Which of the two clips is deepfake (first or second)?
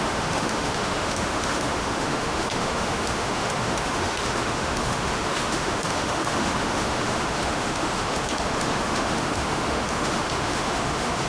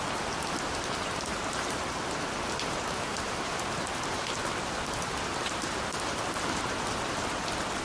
first